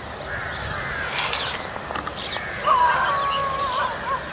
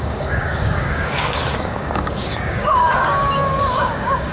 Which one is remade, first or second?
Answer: second